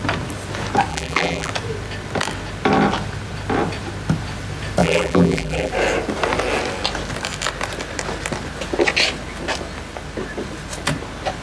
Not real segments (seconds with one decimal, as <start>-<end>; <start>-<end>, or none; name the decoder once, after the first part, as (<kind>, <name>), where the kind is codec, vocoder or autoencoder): 0.9-1.5 (vocoder, BigVGAN v2); 4.8-5.7